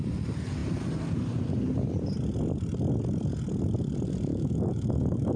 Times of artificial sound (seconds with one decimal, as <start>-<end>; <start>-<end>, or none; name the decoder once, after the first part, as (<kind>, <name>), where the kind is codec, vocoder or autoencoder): 4.3-5.4 (autoencoder, DAC-VAE)